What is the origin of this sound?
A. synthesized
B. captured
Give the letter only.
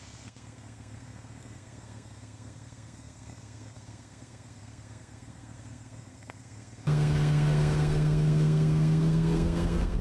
A